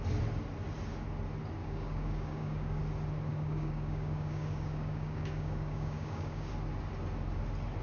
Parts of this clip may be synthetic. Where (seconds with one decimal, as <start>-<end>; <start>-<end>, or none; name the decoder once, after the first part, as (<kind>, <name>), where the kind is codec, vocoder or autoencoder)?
1.6-2.8 (codec, DAC); 3.3-6.5